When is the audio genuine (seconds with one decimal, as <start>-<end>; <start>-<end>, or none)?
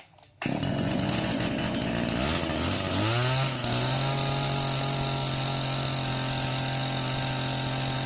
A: 0.0-0.7; 1.9-8.1